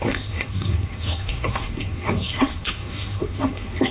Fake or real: fake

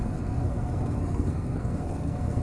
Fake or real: fake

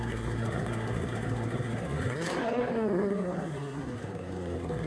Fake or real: fake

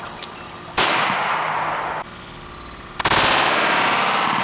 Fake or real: real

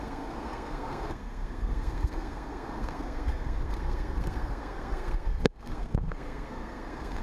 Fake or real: fake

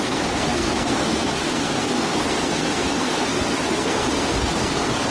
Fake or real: fake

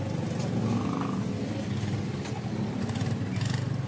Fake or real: real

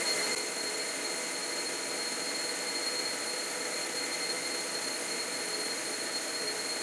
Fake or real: real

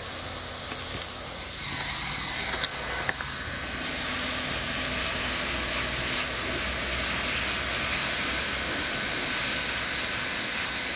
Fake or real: real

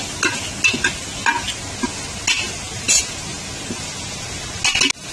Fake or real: real